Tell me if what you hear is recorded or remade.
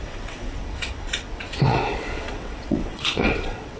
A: remade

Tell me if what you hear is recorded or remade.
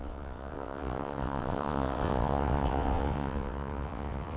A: remade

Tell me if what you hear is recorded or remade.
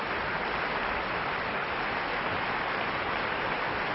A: recorded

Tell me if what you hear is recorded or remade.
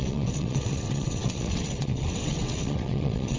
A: remade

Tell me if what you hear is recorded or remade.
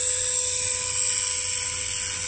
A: recorded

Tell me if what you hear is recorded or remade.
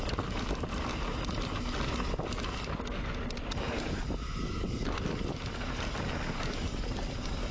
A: recorded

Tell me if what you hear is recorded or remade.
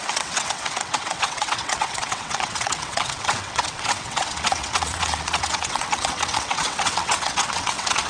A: remade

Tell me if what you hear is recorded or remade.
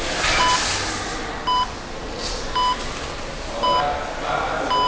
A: recorded